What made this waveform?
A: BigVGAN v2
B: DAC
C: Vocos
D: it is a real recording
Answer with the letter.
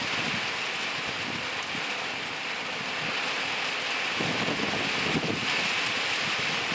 D